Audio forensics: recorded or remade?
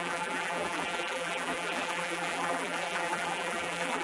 remade